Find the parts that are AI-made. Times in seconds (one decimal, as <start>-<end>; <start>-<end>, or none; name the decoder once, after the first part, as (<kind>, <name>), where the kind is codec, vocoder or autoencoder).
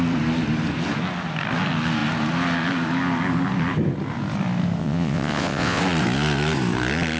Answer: 4.8-5.8 (vocoder, WaveNeXt)